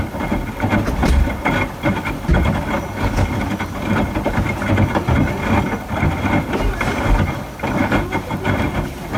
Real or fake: real